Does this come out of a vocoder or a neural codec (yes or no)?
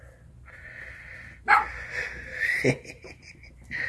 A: no